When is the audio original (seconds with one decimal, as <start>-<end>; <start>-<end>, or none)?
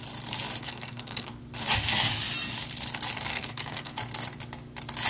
0.0-0.6; 1.4-3.3; 4.0-5.1